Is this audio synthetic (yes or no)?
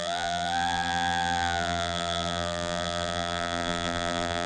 yes